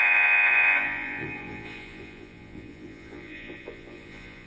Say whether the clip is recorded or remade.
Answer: remade